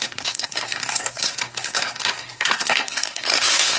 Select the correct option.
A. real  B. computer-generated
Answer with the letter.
B